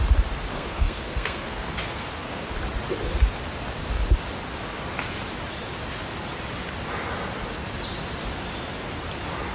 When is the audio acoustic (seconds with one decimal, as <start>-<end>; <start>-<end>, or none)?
0.0-0.5; 2.5-9.5